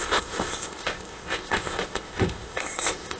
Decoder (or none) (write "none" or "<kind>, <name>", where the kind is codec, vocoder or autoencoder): codec, ZipCodec